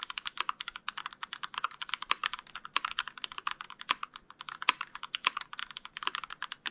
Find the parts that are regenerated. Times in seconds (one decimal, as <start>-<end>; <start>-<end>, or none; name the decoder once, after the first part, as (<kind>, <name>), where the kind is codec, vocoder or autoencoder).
0.0-6.7 (vocoder, BigVGAN v2)